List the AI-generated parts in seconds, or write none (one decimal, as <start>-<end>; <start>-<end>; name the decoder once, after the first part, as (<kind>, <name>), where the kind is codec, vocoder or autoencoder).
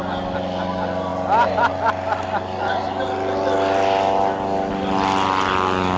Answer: none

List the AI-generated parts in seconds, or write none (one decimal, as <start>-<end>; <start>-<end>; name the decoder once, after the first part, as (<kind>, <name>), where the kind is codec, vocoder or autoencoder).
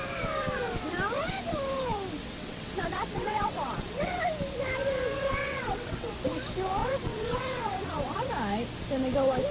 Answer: 2.2-4.2 (vocoder, WaveNeXt); 5.4-6.1; 6.8-8.3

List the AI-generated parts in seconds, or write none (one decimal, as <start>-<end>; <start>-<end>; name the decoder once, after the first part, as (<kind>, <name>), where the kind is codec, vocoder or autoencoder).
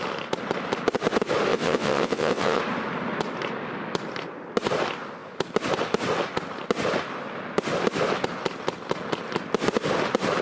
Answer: 1.5-2.6 (vocoder, WaveNeXt)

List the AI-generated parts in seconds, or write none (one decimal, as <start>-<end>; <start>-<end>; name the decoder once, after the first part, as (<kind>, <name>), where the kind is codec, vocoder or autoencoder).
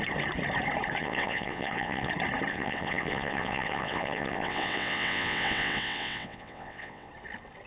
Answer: 1.0-2.1 (vocoder, WaveNeXt); 2.5-7.1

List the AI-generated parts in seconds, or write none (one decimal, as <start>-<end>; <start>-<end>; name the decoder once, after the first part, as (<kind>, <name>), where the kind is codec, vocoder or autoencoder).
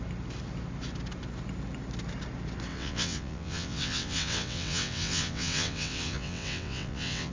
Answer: 2.7-7.3 (vocoder, WaveNeXt)